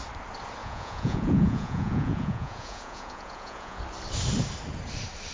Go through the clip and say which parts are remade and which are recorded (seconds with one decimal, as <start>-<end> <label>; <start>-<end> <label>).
0.0-0.6 recorded; 0.6-3.8 remade; 3.8-5.3 recorded